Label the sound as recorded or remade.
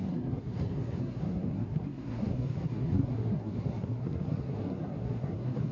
remade